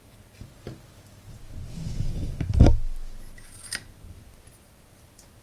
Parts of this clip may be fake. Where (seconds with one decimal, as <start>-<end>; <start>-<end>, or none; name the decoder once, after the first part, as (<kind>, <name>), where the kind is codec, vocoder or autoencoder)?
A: none